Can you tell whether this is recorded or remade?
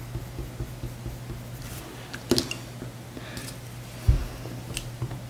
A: recorded